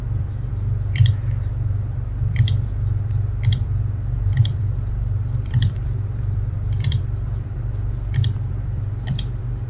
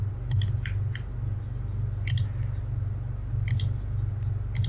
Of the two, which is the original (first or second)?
second